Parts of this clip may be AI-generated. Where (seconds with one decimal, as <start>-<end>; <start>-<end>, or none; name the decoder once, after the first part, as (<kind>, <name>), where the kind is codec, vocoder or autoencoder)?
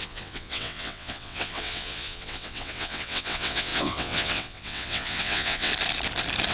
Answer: 0.0-5.7 (vocoder, WaveNeXt)